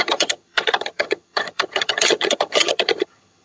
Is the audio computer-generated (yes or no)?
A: yes